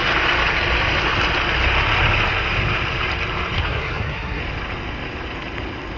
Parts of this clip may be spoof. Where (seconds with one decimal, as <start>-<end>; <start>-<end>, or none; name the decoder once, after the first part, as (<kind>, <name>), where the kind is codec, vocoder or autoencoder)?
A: 3.6-4.4 (codec, SNAC)